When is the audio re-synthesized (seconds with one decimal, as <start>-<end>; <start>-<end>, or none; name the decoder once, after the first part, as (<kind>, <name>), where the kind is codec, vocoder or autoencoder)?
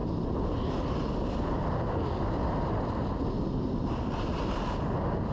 none